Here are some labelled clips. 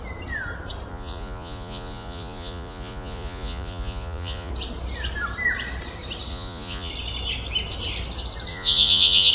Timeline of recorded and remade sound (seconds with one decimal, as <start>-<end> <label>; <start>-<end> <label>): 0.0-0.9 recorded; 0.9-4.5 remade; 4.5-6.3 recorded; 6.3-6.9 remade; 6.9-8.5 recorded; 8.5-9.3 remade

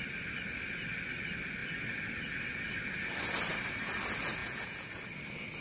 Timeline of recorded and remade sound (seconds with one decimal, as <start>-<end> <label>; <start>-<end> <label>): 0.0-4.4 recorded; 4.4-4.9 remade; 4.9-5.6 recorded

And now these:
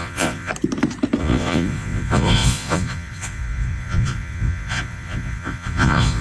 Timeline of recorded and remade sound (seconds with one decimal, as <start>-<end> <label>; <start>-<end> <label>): 0.0-0.5 remade; 0.5-1.2 recorded; 1.2-6.2 remade

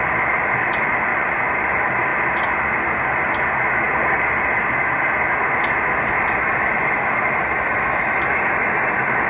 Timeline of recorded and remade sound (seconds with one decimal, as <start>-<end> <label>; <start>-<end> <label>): 0.0-1.1 recorded; 1.1-1.7 remade; 1.7-9.3 recorded

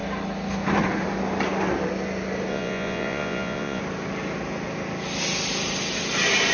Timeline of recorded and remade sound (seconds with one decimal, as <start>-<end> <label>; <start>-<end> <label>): 0.0-2.5 recorded; 2.5-3.8 remade; 3.8-6.5 recorded

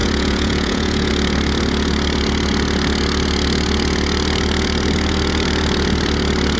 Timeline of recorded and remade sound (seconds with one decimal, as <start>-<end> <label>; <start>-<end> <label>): 0.0-1.1 remade; 1.1-6.6 recorded